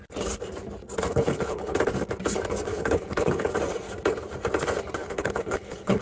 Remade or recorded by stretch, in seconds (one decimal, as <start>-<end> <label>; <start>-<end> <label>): 0.0-1.1 recorded; 1.1-1.8 remade; 1.8-2.7 recorded; 2.7-3.5 remade; 3.5-5.0 recorded; 5.0-6.0 remade